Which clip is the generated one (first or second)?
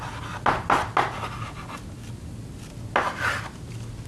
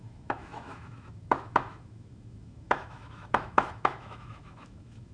second